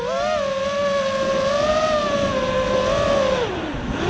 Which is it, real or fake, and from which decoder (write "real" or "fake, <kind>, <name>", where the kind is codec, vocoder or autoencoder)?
real